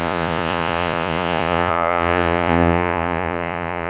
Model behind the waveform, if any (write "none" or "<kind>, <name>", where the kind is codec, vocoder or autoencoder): vocoder, Vocos